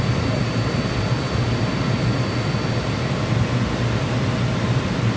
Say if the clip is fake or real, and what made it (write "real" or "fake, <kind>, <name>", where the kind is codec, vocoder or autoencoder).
real